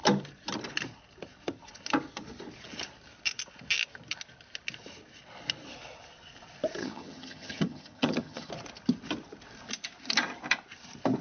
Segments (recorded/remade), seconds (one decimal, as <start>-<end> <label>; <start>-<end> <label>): 0.0-6.8 recorded; 6.8-8.5 remade; 8.5-11.2 recorded